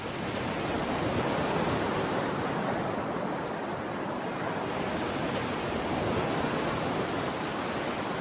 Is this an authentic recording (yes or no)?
yes